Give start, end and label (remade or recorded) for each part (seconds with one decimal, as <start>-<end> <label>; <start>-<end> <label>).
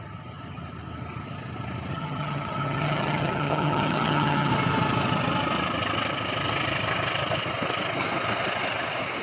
0.0-1.9 recorded; 1.9-4.5 remade; 4.5-9.2 recorded